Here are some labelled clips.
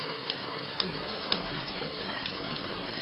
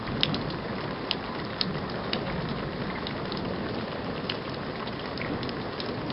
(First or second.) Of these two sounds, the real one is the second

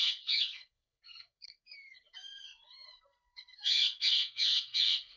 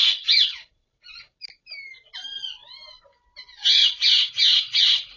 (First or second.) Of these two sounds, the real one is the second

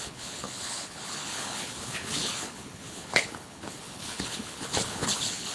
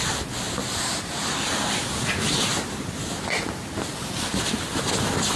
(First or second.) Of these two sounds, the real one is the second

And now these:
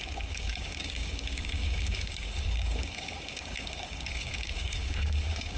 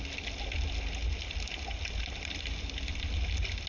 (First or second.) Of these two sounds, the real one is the second